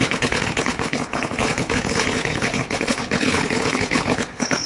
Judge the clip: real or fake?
fake